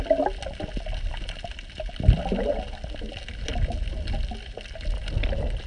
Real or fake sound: real